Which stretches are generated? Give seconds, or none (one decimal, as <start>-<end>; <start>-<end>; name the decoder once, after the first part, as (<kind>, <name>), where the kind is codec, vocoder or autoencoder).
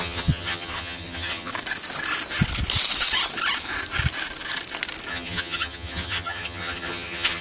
0.0-1.5 (vocoder, HiFi-GAN); 5.1-7.4